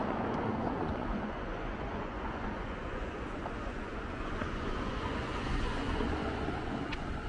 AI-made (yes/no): yes